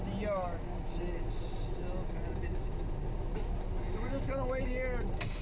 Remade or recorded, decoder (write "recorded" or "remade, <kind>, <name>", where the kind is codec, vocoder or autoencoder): recorded